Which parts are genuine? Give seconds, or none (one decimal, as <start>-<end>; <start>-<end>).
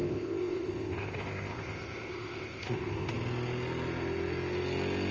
3.1-5.1